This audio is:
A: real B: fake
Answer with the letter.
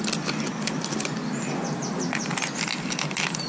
A